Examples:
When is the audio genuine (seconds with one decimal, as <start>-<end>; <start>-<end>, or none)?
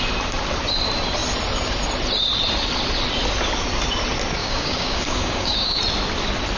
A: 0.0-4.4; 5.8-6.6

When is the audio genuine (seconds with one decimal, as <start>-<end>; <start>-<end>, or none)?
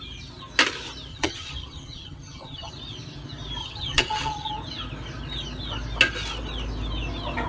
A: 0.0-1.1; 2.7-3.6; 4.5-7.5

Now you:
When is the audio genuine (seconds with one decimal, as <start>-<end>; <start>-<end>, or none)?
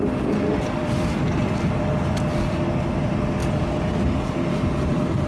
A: 0.0-0.8; 1.7-3.4; 4.0-5.3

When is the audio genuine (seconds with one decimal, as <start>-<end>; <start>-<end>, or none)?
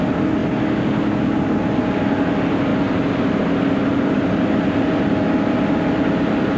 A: 0.0-6.6